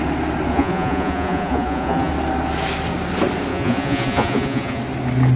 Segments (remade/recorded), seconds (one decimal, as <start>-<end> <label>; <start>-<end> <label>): 0.0-0.5 recorded; 0.5-2.1 remade; 2.1-3.5 recorded; 3.5-4.8 remade; 4.8-5.4 recorded